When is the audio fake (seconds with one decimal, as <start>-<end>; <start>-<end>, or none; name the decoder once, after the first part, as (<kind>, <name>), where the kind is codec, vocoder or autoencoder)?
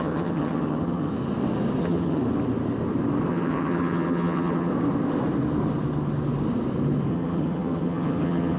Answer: 0.0-1.1 (vocoder, HiFi-GAN); 1.8-2.2; 3.3-4.7; 7.1-8.6